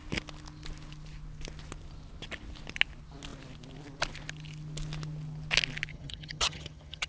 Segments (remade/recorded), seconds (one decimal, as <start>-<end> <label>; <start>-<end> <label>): 0.0-5.9 recorded; 5.9-7.1 remade